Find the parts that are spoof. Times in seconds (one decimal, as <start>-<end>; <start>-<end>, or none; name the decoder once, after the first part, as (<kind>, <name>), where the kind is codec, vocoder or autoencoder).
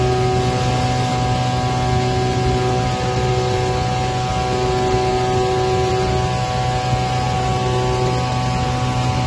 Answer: none